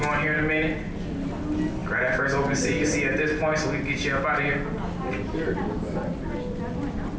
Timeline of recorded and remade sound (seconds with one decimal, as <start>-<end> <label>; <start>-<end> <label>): 0.0-7.2 recorded